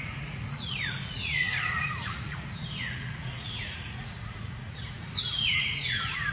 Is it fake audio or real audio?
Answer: fake